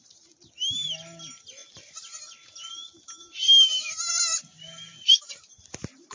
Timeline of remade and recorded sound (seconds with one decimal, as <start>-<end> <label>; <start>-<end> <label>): 0.0-6.1 recorded

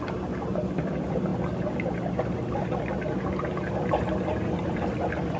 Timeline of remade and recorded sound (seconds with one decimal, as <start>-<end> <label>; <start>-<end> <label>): 0.0-5.4 recorded

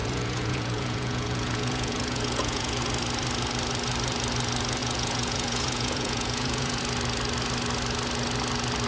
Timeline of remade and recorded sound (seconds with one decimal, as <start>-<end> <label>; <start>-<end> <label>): 0.0-2.8 remade; 2.8-4.8 recorded; 4.8-6.8 remade; 6.8-8.9 recorded

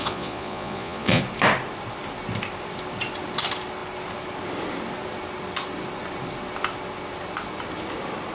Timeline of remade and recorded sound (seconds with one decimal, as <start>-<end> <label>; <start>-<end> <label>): 0.0-1.2 remade; 1.2-8.3 recorded

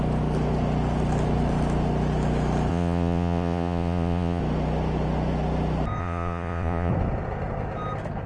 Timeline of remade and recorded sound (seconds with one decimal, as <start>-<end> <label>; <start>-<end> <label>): 0.0-2.7 recorded; 2.7-4.4 remade; 4.4-6.0 recorded; 6.0-6.9 remade; 6.9-8.3 recorded

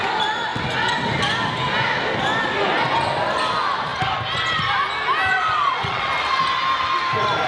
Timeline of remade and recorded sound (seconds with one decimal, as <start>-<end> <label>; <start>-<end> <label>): 0.0-5.3 recorded; 5.3-6.1 remade; 6.1-7.5 recorded

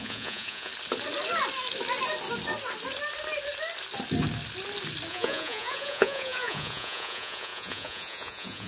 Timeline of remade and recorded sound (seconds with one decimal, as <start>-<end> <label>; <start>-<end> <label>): 0.0-0.7 remade; 0.7-5.1 recorded; 5.1-8.7 remade

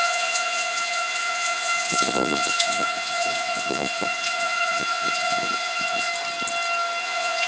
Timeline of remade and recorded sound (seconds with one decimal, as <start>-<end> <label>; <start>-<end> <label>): 0.0-6.1 remade; 6.1-7.0 recorded; 7.0-7.5 remade